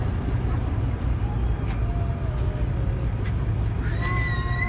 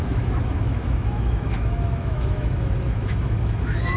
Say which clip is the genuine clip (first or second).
first